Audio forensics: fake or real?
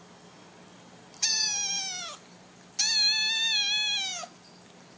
real